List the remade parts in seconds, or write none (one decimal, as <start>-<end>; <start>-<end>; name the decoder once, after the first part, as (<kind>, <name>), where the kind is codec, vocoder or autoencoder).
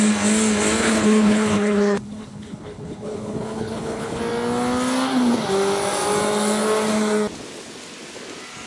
0.8-4.2 (codec, HILCodec)